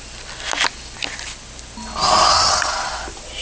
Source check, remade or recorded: recorded